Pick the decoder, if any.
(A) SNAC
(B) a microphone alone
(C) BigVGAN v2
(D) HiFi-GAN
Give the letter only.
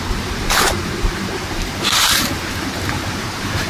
C